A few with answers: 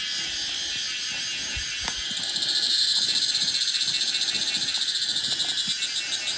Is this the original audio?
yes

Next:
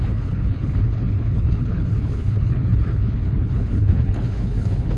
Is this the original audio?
no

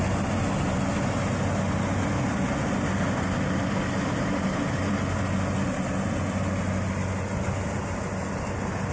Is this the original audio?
yes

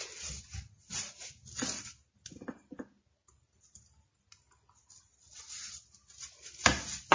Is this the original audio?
yes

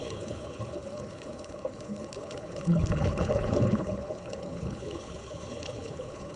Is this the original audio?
no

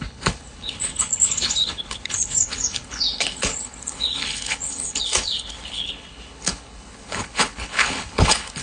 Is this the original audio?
no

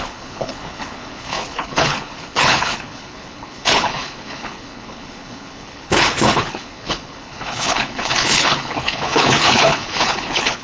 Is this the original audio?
no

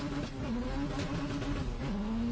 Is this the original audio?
yes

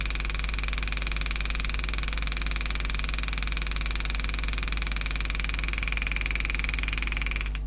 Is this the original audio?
yes